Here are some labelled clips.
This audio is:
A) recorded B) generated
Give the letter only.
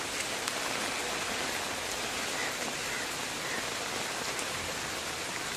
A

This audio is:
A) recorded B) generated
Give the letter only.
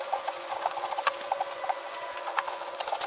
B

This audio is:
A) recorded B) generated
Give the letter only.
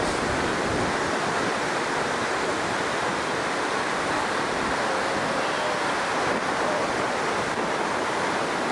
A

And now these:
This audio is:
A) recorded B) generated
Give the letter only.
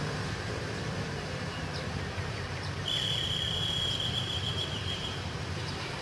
B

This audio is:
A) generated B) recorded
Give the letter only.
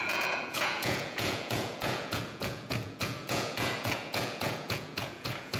A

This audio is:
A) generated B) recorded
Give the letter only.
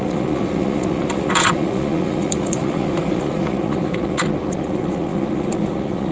A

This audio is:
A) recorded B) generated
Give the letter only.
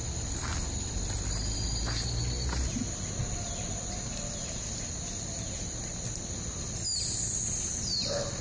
A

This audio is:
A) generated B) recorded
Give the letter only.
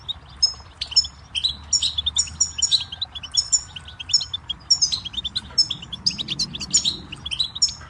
B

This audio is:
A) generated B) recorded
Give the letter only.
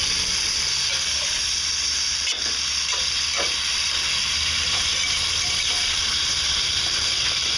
B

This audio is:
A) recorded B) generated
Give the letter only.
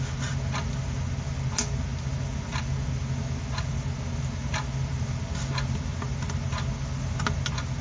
A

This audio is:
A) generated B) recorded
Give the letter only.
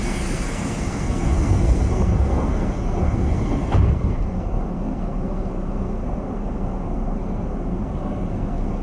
A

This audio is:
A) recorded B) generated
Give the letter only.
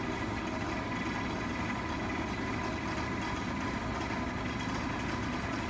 A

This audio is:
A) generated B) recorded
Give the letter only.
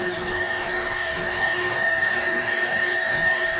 A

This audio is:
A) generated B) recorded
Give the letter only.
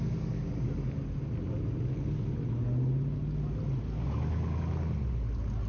B